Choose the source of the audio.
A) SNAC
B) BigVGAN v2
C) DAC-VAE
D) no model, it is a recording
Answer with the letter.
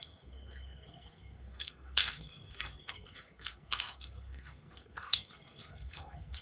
A